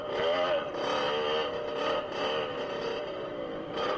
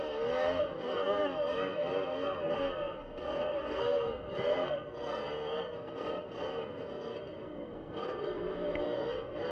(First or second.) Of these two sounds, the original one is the first